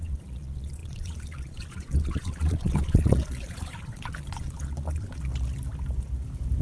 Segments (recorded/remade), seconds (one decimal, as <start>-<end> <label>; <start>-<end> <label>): 0.0-5.3 remade; 5.3-6.6 recorded